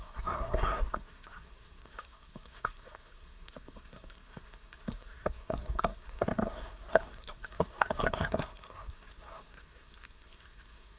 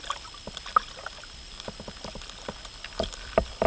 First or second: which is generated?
first